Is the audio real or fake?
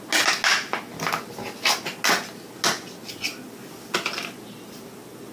real